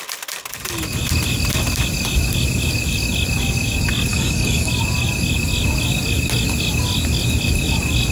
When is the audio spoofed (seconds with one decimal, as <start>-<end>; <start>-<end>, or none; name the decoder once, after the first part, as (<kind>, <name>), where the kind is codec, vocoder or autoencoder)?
4.1-4.7 (codec, DAC)